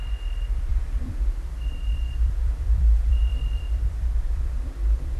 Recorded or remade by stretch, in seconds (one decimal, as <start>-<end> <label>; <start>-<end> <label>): 0.0-5.2 remade

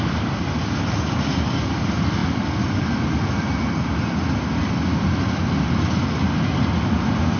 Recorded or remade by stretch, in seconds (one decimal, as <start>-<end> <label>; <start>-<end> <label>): 0.0-7.4 recorded

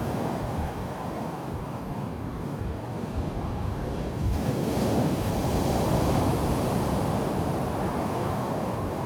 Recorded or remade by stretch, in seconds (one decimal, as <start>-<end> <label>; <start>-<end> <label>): 0.0-5.3 remade; 5.3-8.0 recorded; 8.0-9.1 remade

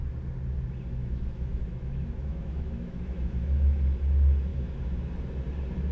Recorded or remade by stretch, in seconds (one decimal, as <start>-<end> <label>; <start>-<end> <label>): 0.0-1.0 recorded; 1.0-3.8 remade; 3.8-4.5 recorded; 4.5-5.1 remade; 5.1-5.9 recorded

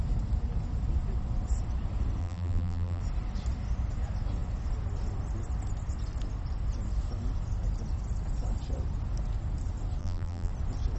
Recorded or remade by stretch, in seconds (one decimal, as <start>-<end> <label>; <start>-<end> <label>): 0.0-2.2 recorded; 2.2-3.0 remade; 3.0-10.0 recorded; 10.0-10.5 remade; 10.5-11.0 recorded

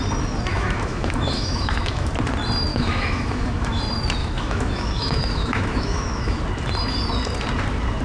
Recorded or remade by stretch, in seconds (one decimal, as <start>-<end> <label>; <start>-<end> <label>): 0.0-0.5 recorded; 0.5-2.1 remade; 2.1-2.7 recorded; 2.7-3.8 remade; 3.8-4.2 recorded; 4.2-6.4 remade; 6.4-8.0 recorded

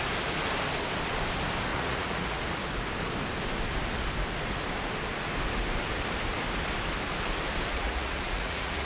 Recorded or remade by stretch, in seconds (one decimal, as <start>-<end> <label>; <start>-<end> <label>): 0.0-1.7 recorded; 1.7-2.4 remade; 2.4-7.7 recorded; 7.7-8.9 remade

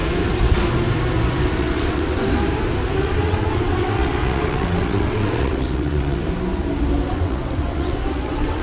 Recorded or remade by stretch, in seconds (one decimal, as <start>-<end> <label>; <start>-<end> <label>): 0.0-1.6 recorded; 1.6-2.2 remade; 2.2-3.0 recorded; 3.0-6.2 remade; 6.2-7.1 recorded; 7.1-8.6 remade